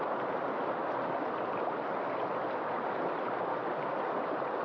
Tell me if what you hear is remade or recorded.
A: recorded